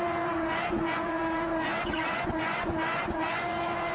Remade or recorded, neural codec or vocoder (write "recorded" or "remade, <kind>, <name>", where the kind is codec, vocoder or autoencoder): remade, vocoder, Vocos